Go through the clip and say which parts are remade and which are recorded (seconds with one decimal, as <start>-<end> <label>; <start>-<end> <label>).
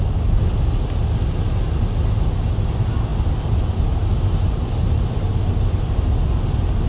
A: 0.0-6.9 recorded